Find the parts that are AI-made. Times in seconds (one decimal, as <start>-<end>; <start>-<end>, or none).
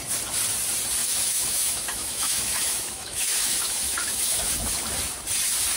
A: 1.0-4.5